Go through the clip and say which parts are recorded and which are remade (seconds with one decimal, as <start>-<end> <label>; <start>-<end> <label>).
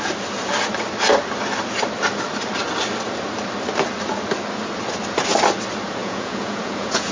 0.0-6.0 recorded; 6.0-7.1 remade